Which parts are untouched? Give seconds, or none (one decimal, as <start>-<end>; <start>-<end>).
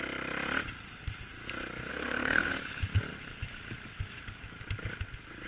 0.0-1.9; 2.5-5.5